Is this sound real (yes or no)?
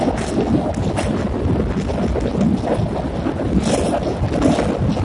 yes